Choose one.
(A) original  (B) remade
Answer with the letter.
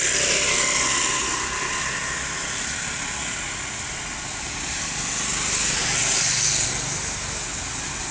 A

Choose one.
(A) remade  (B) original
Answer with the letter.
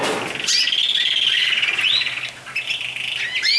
B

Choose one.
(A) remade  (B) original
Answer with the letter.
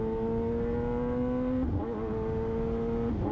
B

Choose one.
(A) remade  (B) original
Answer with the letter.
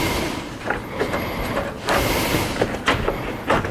B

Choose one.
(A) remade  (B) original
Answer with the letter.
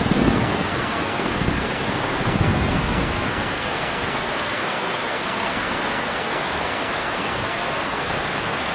A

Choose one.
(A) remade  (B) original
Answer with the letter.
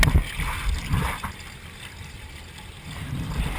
B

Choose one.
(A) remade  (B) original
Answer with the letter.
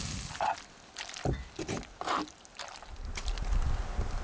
A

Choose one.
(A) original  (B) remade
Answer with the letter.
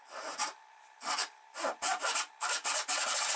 B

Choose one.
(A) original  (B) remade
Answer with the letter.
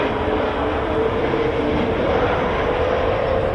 A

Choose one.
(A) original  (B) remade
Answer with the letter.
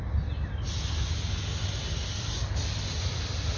A